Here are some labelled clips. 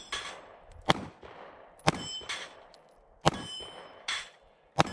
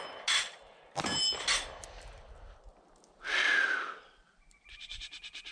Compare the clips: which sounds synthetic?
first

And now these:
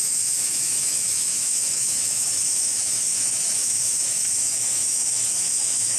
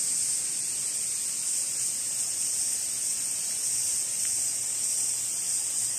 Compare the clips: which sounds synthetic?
first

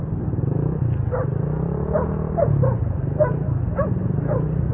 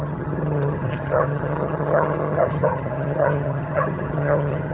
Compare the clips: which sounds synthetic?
second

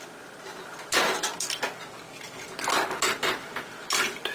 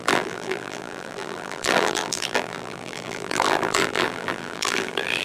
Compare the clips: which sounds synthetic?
second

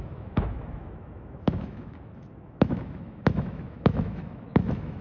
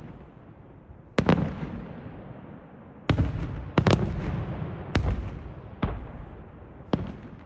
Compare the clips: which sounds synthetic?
first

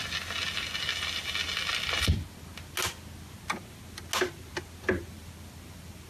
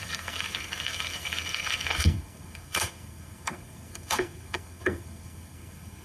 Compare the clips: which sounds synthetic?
second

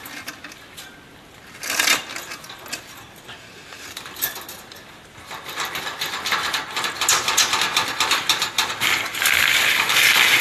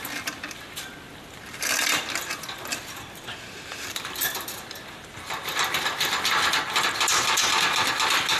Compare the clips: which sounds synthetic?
second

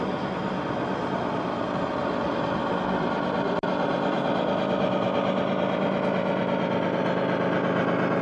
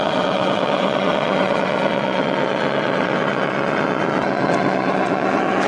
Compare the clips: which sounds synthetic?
second